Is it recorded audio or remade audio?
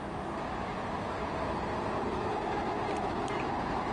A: recorded